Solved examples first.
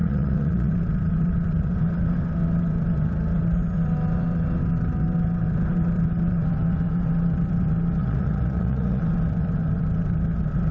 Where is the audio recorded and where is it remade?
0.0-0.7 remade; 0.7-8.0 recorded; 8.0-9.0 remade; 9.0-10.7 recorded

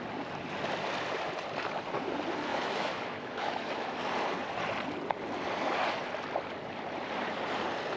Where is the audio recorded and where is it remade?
0.0-2.5 recorded; 2.5-4.0 remade; 4.0-8.0 recorded

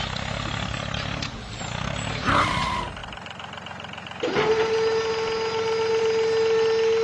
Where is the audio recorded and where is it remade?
0.0-7.0 recorded

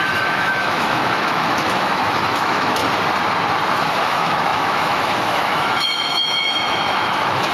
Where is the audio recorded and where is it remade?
0.0-2.8 remade; 2.8-3.9 recorded; 3.9-7.5 remade

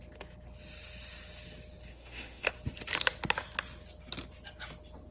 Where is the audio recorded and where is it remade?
0.0-1.9 recorded; 1.9-2.5 remade; 2.5-5.1 recorded

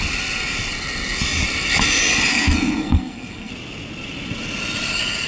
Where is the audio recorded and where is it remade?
0.0-2.3 recorded; 2.3-3.5 remade; 3.5-5.3 recorded